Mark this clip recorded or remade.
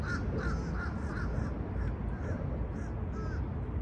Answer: recorded